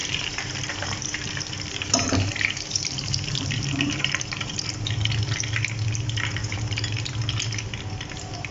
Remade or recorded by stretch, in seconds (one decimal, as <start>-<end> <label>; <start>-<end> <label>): 0.0-5.1 remade; 5.1-6.4 recorded; 6.4-7.1 remade; 7.1-8.5 recorded